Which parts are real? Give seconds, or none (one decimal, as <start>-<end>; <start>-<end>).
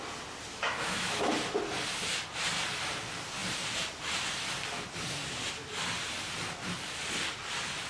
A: 0.0-0.5; 1.3-7.9